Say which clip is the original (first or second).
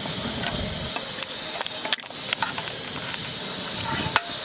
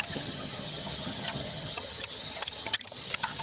first